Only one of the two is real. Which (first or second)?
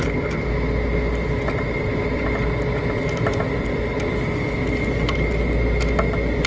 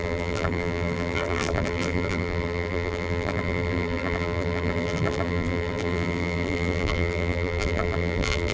first